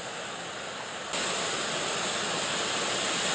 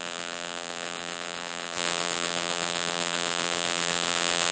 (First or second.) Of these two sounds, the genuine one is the first